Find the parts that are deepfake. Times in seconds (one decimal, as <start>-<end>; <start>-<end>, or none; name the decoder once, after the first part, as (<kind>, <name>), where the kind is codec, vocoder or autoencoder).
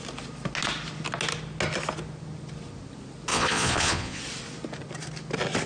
3.3-4.2 (vocoder, Vocos)